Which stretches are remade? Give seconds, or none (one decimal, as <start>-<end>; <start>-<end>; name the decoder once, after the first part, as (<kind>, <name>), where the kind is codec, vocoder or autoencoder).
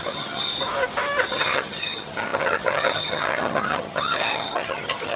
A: 0.0-0.5 (vocoder, HiFi-GAN); 1.3-5.2